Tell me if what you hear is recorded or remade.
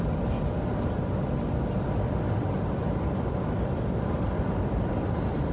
recorded